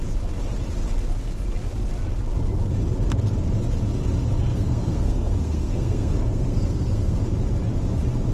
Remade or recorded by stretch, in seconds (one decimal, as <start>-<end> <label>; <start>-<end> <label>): 0.0-4.5 recorded; 4.5-7.2 remade; 7.2-8.3 recorded